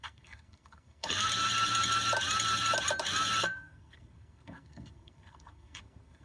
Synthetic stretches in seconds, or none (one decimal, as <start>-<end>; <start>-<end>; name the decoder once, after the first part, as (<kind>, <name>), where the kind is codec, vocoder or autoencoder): 0.0-1.3 (codec, SNAC); 3.4-6.2